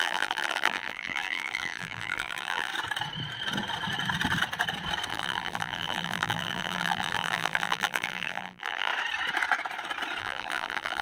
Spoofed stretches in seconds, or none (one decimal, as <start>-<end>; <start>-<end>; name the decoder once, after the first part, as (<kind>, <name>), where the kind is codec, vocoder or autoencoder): 0.0-2.7 (vocoder, BigVGAN v2); 5.1-8.9; 10.2-11.0